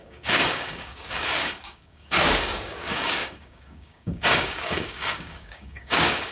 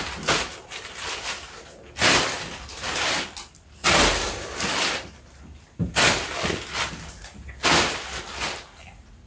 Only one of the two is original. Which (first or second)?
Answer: second